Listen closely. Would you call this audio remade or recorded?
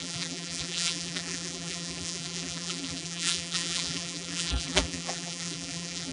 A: remade